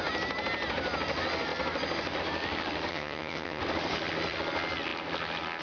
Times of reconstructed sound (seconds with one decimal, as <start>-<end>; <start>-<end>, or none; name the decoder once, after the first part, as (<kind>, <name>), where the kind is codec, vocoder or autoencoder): 2.9-3.6 (vocoder, HiFi-GAN)